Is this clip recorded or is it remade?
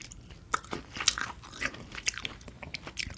recorded